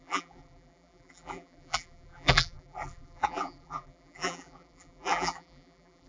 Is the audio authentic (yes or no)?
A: no